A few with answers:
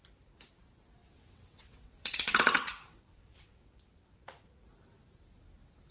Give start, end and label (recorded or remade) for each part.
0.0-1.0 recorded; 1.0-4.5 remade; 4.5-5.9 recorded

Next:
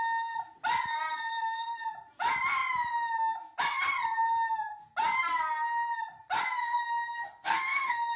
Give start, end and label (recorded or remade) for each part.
0.0-6.6 recorded; 6.6-8.2 remade